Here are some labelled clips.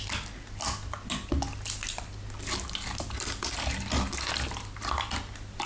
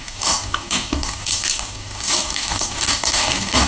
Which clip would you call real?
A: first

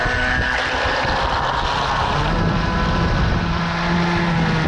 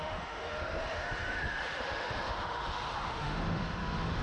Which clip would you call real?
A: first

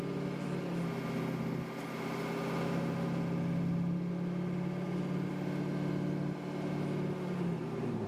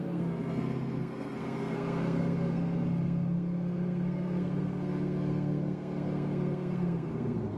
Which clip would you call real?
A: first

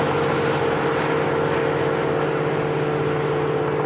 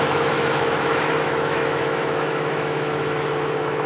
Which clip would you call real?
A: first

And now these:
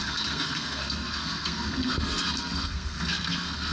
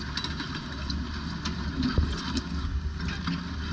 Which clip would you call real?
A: second